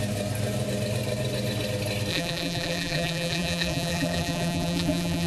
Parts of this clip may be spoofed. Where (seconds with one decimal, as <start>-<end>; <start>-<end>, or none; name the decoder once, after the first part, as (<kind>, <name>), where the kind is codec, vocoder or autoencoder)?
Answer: 2.1-5.3 (vocoder, BigVGAN v2)

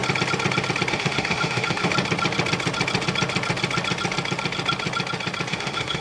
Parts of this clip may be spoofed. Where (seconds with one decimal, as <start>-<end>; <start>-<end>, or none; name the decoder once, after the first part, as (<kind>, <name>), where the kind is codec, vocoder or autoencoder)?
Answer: 0.9-1.9 (autoencoder, DAC-VAE); 5.5-6.0